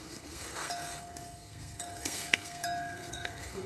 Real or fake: fake